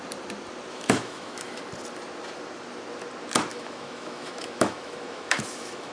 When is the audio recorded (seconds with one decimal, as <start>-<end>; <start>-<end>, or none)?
0.0-0.7; 1.6-3.5